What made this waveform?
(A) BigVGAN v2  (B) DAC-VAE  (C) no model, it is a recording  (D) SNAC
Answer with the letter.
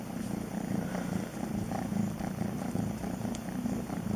A